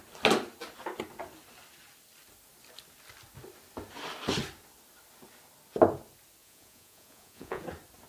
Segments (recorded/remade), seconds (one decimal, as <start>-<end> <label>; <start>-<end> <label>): 0.0-6.4 recorded; 6.4-7.6 remade; 7.6-8.1 recorded